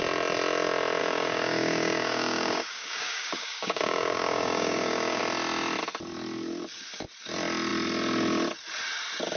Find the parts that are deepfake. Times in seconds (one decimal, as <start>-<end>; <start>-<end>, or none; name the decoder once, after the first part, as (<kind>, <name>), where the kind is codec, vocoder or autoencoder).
1.0-5.2 (codec, DAC)